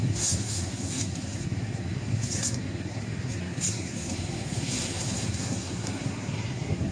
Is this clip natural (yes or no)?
no